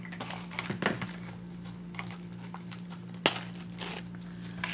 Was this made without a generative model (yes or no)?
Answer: yes